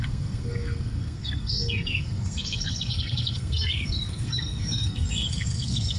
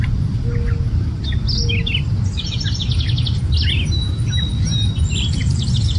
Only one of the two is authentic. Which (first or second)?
second